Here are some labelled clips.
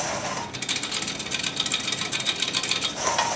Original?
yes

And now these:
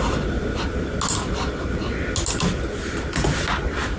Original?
yes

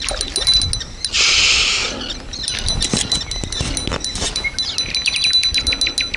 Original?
yes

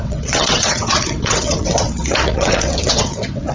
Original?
no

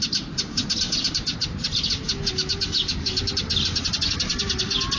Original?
yes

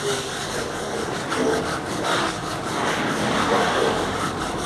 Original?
no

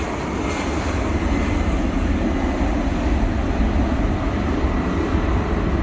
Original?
yes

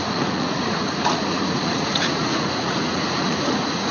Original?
no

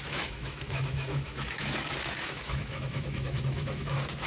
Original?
no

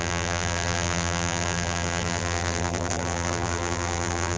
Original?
no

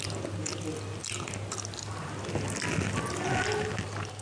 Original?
yes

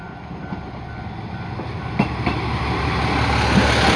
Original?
yes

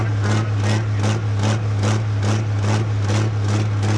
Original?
yes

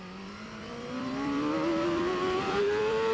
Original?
no